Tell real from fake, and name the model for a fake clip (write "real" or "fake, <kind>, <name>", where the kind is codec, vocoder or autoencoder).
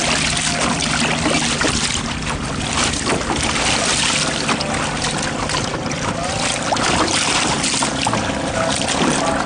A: real